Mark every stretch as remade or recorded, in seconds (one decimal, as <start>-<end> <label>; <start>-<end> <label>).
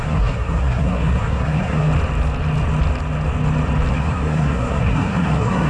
0.0-1.9 remade; 1.9-3.9 recorded; 3.9-5.7 remade